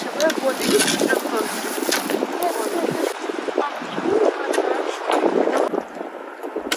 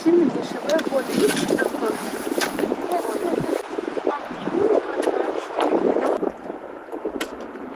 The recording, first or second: first